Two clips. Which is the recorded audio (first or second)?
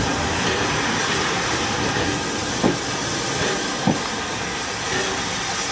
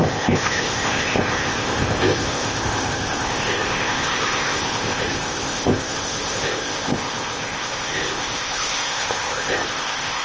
first